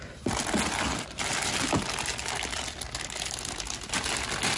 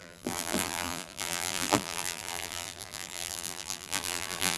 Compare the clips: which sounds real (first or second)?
first